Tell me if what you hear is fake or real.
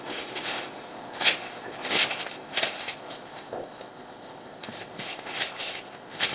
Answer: fake